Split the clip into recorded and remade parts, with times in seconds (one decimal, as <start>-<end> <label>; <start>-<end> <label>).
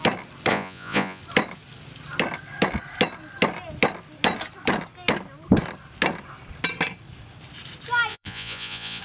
0.0-0.5 recorded; 0.5-1.2 remade; 1.2-8.1 recorded; 8.1-9.0 remade